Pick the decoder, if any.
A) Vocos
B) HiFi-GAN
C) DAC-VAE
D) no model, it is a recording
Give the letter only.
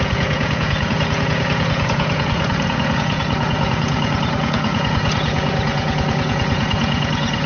A